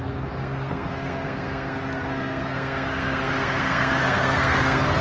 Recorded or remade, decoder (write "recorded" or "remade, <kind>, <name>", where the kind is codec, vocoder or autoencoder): remade, codec, SNAC